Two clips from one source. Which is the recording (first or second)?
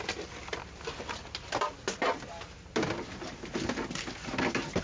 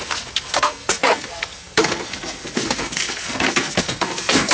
first